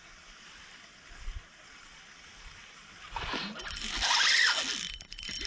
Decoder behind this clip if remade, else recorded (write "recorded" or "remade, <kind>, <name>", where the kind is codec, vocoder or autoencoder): recorded